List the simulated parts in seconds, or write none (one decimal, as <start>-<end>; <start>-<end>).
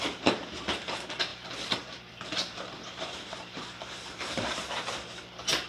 1.3-4.4